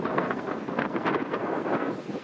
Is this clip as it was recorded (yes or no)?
no